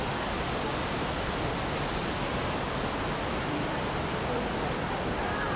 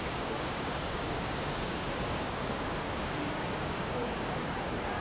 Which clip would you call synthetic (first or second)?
second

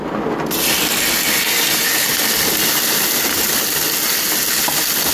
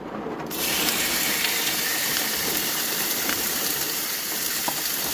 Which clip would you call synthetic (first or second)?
second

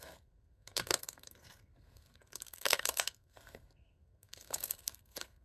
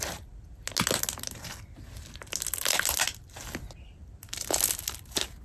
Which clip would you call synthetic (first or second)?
first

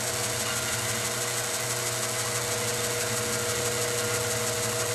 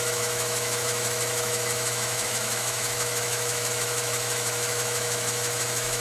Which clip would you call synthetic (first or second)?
second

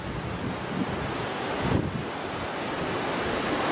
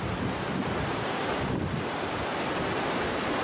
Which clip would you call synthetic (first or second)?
second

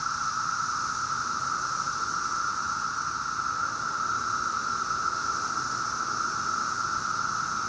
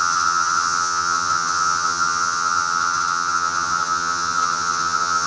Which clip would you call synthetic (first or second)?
second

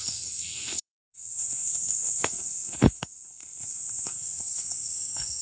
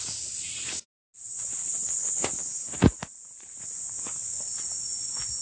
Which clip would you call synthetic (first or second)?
first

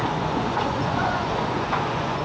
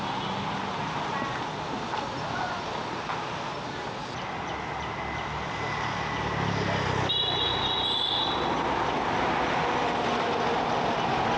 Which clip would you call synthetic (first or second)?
first